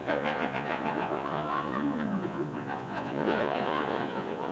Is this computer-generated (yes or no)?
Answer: yes